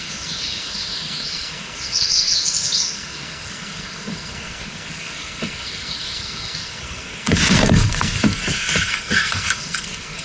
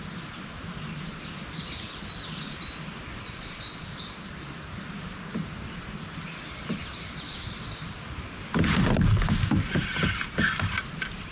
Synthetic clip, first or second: first